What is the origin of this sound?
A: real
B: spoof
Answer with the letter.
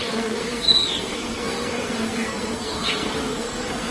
B